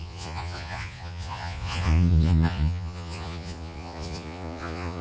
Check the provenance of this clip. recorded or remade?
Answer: remade